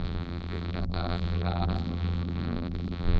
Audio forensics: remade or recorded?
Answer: remade